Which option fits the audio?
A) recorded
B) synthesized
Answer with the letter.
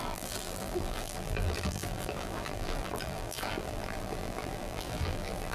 B